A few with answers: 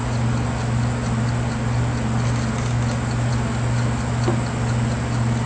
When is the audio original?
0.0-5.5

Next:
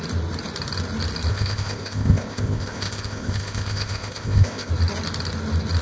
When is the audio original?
0.0-1.3; 4.7-5.8

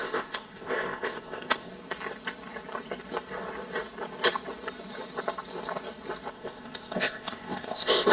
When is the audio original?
1.7-6.3

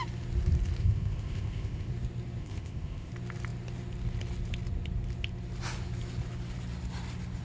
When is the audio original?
0.0-0.8; 1.9-2.4; 3.1-7.4

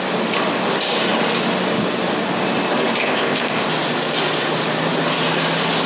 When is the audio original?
0.0-3.0; 3.7-5.9